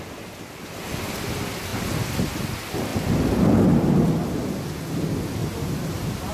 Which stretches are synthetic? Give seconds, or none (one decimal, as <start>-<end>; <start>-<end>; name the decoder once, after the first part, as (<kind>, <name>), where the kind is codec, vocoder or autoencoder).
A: 5.4-6.3 (vocoder, BigVGAN v2)